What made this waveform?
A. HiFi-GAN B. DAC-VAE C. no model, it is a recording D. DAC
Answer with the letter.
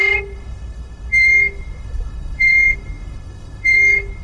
B